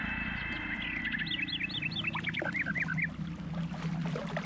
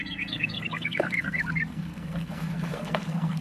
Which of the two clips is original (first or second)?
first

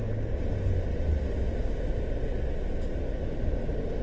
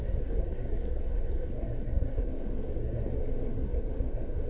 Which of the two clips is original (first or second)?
first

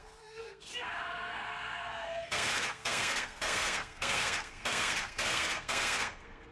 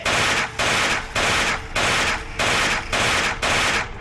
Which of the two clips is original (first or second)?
second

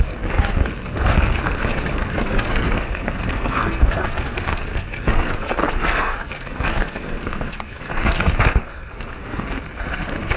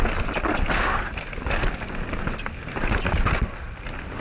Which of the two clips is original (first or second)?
second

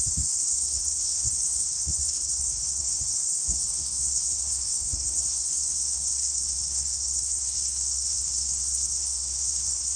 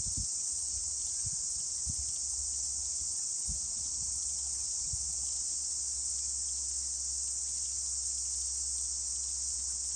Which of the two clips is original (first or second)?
second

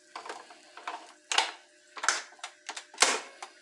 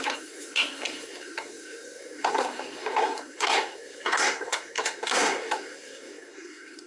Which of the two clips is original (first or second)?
first